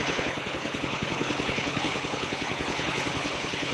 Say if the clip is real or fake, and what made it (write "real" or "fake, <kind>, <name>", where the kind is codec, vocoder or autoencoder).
fake, codec, HILCodec